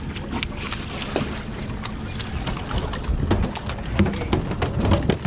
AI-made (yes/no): no